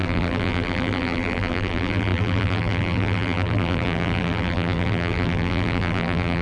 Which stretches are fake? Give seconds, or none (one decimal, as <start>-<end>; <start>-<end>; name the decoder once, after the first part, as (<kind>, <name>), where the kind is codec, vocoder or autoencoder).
0.0-6.4 (vocoder, BigVGAN v2)